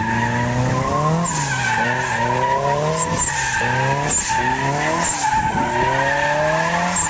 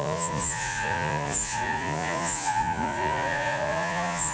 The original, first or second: first